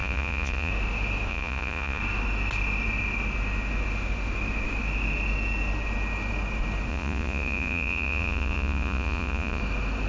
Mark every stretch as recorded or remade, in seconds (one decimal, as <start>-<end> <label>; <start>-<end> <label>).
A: 0.0-0.7 remade; 0.7-1.3 recorded; 1.3-2.0 remade; 2.0-6.9 recorded; 6.9-9.6 remade; 9.6-10.1 recorded